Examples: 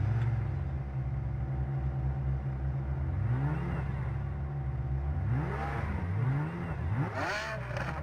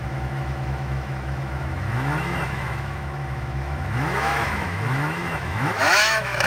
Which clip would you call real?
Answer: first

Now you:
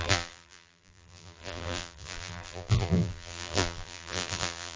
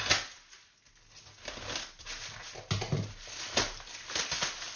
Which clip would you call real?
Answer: second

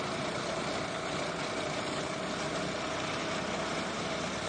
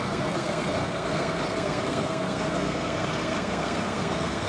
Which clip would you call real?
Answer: first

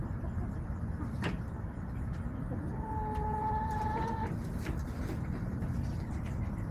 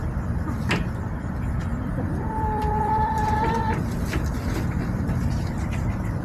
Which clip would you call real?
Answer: first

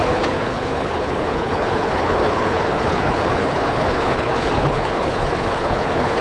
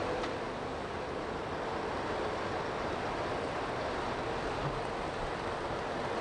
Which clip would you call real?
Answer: second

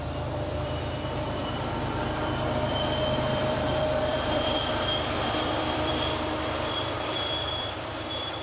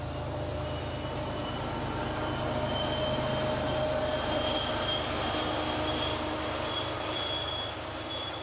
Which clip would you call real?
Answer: second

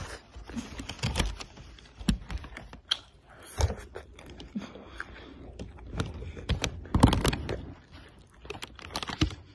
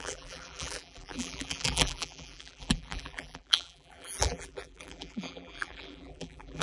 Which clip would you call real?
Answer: first